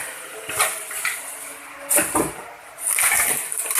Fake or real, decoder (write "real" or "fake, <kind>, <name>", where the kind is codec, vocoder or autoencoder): real